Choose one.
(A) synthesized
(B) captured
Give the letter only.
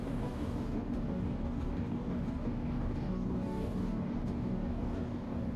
A